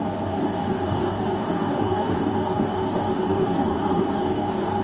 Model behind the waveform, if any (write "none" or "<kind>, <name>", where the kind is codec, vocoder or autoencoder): codec, DAC